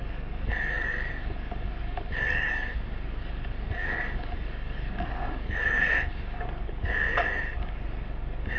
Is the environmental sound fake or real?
fake